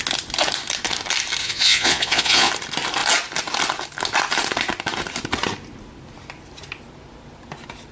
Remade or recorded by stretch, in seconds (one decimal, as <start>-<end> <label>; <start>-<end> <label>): 0.0-1.4 recorded; 1.4-2.5 remade; 2.5-7.9 recorded